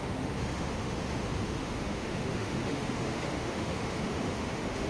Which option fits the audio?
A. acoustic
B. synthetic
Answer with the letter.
B